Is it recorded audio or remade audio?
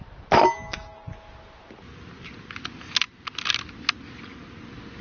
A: recorded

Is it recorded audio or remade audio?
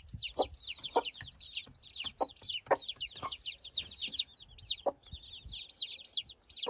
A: recorded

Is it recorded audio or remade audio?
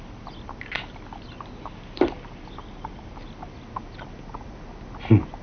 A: recorded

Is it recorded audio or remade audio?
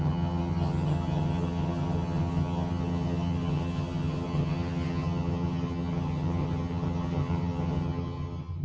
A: remade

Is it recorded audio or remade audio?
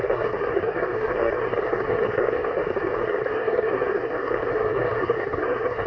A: remade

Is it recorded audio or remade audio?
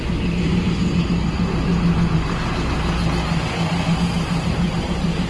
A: recorded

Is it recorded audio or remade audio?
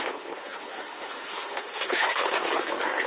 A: remade